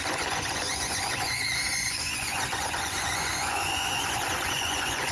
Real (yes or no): no